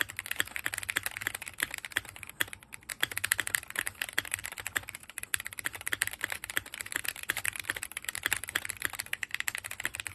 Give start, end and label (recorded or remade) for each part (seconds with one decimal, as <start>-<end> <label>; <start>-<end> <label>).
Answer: 0.0-2.9 recorded; 2.9-3.8 remade; 3.8-4.4 recorded; 4.4-9.5 remade; 9.5-10.1 recorded